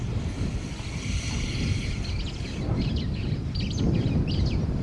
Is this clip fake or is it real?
real